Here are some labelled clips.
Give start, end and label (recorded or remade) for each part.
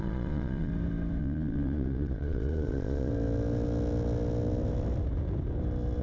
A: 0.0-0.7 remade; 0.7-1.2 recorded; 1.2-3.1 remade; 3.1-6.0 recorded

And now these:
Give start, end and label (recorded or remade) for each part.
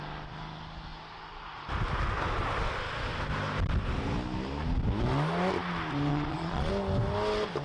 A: 0.0-6.1 recorded; 6.1-6.7 remade; 6.7-7.6 recorded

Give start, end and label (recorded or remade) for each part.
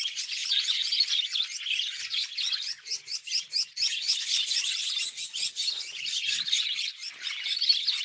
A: 0.0-0.4 recorded; 0.4-0.9 remade; 0.9-8.0 recorded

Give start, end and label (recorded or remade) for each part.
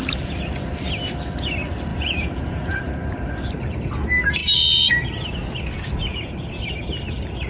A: 0.0-1.9 recorded; 1.9-2.8 remade; 2.8-7.5 recorded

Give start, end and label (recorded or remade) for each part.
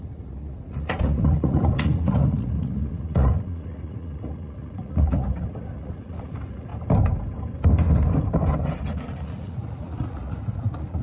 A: 0.0-6.7 remade; 6.7-9.1 recorded; 9.1-11.0 remade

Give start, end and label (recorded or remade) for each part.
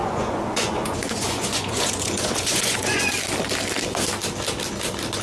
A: 0.0-3.1 remade; 3.1-5.2 recorded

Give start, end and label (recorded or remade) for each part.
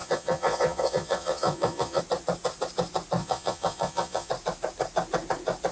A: 0.0-2.0 remade; 2.0-3.2 recorded; 3.2-4.3 remade; 4.3-5.7 recorded